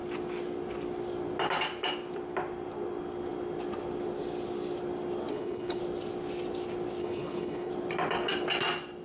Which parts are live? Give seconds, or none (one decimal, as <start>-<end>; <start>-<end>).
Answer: 0.0-5.3; 5.8-7.0; 7.7-9.0